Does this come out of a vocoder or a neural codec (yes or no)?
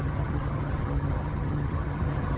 yes